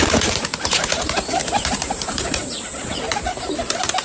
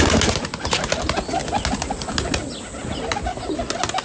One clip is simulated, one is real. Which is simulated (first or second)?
first